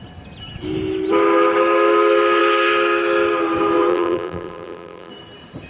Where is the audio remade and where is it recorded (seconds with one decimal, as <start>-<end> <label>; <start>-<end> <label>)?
0.0-3.9 recorded; 3.9-5.1 remade; 5.1-5.7 recorded